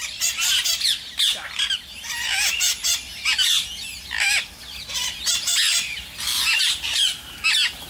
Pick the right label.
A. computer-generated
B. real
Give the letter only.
B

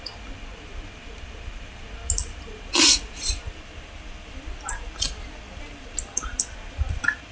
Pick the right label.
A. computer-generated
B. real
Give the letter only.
B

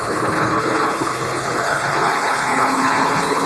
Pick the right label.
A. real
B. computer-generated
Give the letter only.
B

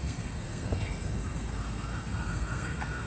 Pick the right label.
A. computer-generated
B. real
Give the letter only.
A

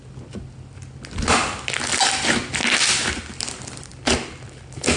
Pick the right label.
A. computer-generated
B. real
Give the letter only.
B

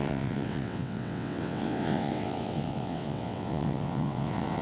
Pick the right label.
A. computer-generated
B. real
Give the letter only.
A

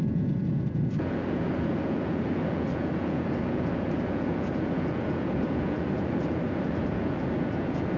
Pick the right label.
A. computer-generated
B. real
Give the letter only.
A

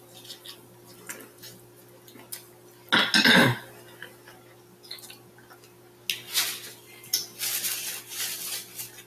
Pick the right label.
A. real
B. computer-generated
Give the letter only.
A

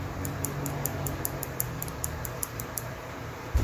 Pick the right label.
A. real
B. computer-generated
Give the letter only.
B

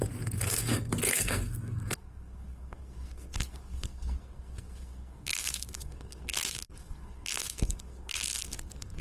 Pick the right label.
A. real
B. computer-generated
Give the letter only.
B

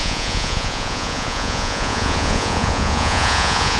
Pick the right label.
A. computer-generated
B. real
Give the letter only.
A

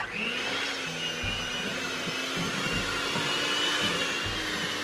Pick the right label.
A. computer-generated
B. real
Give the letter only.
B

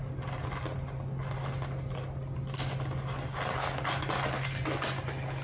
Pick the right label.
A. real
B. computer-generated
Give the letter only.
A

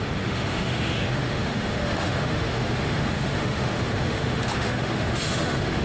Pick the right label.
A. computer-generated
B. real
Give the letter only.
A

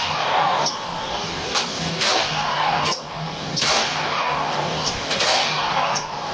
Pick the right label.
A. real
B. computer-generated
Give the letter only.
B